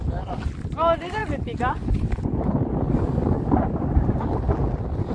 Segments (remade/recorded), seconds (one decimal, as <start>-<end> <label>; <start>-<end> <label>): 0.0-5.1 recorded